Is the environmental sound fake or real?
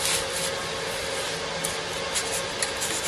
real